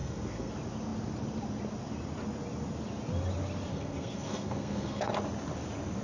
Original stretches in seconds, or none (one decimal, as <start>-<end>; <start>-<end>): 0.5-3.7; 5.1-6.0